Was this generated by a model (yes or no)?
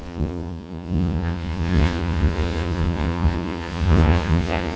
yes